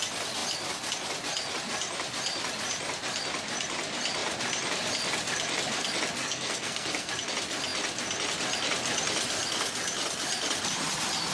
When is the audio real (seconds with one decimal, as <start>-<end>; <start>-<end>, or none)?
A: 0.0-6.2; 7.1-11.3